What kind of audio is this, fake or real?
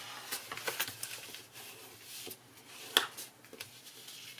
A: real